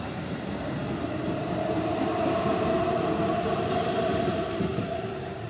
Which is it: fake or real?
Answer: fake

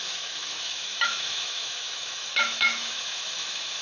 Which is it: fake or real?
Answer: fake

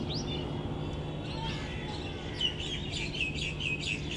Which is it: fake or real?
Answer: real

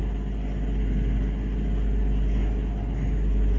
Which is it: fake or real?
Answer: real